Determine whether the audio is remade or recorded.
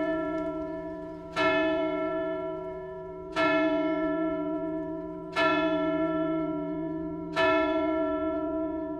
remade